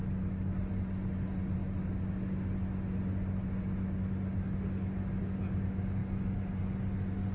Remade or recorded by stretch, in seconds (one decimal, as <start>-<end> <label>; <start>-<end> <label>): 0.0-7.3 recorded

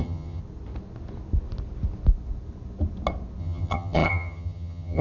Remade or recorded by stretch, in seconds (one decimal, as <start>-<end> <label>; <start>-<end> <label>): 0.0-0.4 remade; 0.4-3.4 recorded; 3.4-5.0 remade

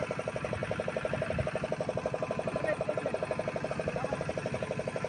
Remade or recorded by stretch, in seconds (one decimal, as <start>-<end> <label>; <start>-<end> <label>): 0.0-5.1 recorded

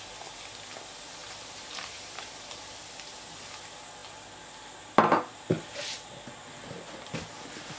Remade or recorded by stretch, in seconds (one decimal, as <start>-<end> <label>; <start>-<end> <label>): 0.0-1.2 recorded; 1.2-2.3 remade; 2.3-7.8 recorded

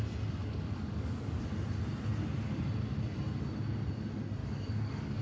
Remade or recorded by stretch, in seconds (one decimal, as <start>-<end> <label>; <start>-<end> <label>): 0.0-0.4 recorded; 0.4-1.4 remade; 1.4-4.4 recorded; 4.4-5.2 remade

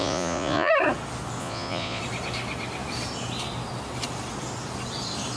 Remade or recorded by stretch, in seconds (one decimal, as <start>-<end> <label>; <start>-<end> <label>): 0.0-0.7 remade; 0.7-1.4 recorded; 1.4-2.0 remade; 2.0-5.4 recorded